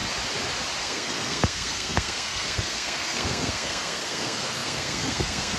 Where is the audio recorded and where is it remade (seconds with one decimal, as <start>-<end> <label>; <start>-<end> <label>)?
0.0-0.8 recorded; 0.8-5.6 remade